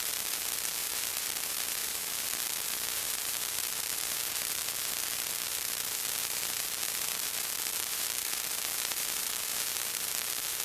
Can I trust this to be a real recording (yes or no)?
no